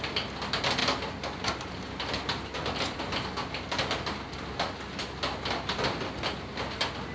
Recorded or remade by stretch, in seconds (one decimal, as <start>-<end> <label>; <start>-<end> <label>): 0.0-7.1 recorded